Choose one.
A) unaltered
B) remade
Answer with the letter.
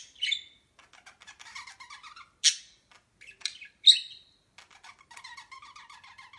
A